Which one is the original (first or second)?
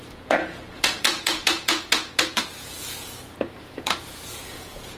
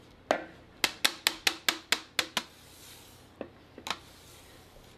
second